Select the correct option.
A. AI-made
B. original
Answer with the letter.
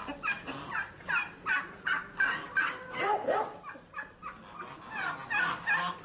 B